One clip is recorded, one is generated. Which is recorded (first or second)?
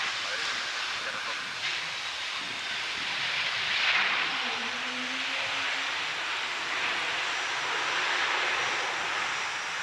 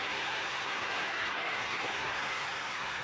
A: first